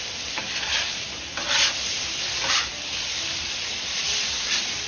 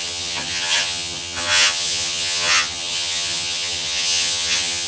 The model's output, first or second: second